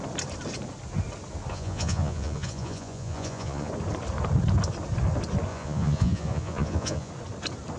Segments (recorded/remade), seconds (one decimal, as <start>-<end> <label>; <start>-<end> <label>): 0.0-1.5 recorded; 1.5-3.7 remade; 3.7-5.5 recorded; 5.5-7.1 remade; 7.1-7.8 recorded